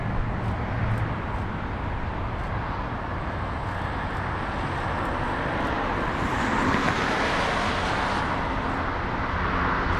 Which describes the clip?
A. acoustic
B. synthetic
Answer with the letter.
A